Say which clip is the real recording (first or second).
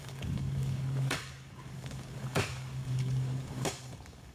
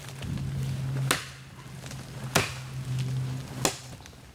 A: second